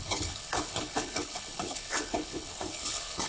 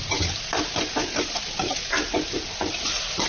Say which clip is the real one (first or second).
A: second